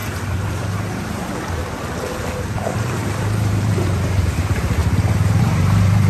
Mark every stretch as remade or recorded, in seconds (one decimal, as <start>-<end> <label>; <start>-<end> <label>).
0.0-0.6 recorded; 0.6-1.3 remade; 1.3-2.0 recorded; 2.0-6.1 remade